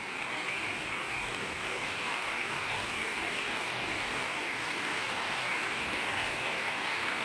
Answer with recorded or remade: remade